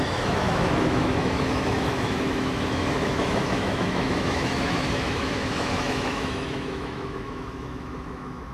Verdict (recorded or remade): remade